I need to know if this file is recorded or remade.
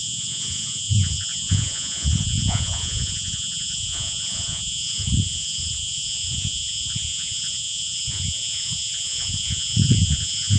remade